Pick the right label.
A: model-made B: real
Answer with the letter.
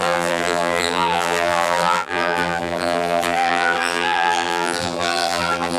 A